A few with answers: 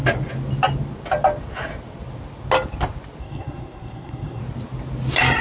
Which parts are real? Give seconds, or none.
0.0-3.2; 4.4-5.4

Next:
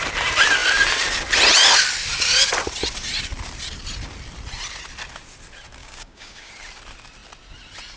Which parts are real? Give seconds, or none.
0.0-5.8; 6.5-8.0

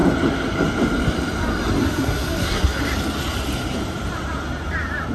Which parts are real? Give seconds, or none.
0.0-1.8; 2.8-5.1